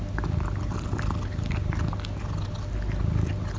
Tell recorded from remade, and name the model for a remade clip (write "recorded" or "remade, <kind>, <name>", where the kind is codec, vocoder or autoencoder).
recorded